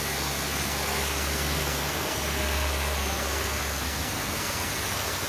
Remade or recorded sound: remade